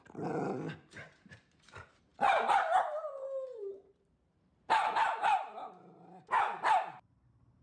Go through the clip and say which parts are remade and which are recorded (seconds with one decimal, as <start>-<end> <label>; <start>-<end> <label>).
0.0-7.6 remade